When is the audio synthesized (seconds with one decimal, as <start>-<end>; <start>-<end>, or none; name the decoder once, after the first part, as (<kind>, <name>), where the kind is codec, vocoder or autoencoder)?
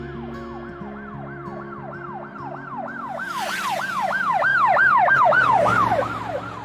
1.4-3.6 (vocoder, BigVGAN v2)